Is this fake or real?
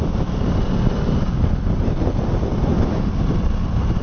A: real